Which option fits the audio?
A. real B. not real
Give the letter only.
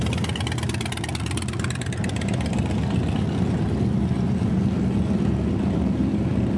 A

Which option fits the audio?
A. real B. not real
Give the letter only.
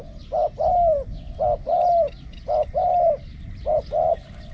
A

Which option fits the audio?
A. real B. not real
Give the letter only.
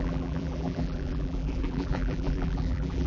B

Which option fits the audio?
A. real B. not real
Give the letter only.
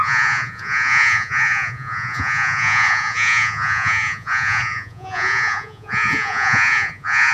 B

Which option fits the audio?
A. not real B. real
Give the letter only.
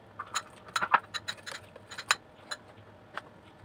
B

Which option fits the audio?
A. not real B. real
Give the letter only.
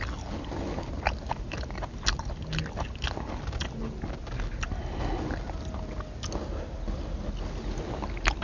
B